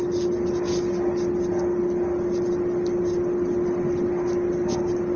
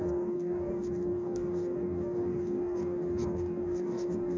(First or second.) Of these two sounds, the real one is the first